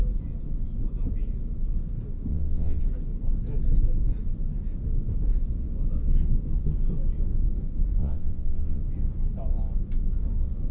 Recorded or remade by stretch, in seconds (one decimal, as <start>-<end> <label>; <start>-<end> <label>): 0.0-2.3 recorded; 2.3-2.8 remade; 2.8-8.0 recorded; 8.0-8.8 remade; 8.8-10.7 recorded